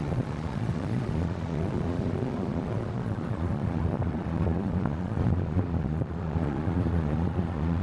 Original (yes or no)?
no